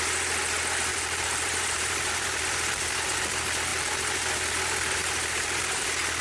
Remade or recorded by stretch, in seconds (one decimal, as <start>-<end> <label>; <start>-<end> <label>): 0.0-0.9 recorded; 0.9-2.4 remade; 2.4-5.0 recorded; 5.0-5.8 remade; 5.8-6.2 recorded

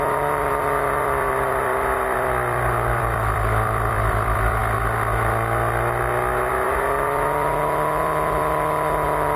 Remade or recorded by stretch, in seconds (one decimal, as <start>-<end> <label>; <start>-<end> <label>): 0.0-4.6 remade; 4.6-6.5 recorded; 6.5-9.4 remade